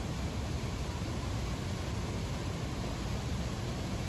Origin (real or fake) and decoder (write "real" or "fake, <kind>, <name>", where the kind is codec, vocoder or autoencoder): real